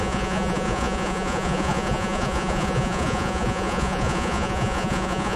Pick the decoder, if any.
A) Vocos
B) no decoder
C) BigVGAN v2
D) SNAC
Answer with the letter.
A